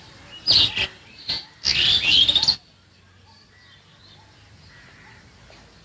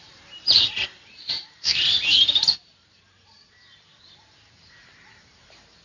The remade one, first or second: second